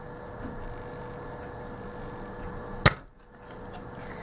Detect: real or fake real